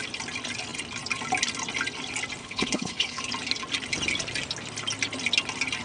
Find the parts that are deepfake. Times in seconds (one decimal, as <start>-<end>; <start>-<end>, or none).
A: 2.4-3.2